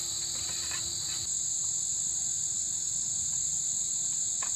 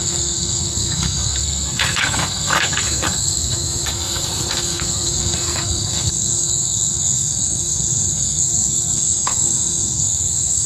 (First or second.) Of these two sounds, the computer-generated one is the second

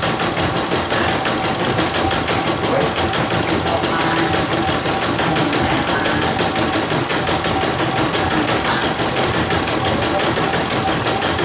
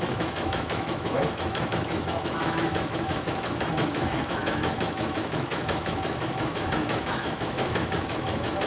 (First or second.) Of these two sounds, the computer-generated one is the second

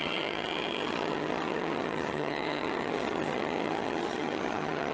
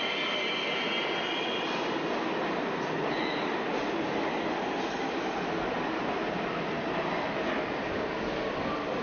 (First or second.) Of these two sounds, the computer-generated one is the first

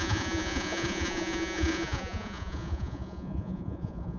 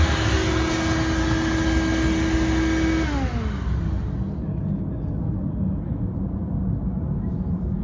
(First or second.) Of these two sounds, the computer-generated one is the first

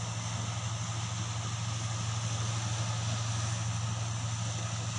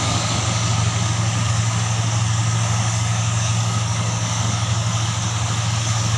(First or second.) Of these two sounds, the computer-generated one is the second